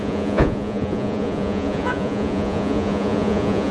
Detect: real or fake fake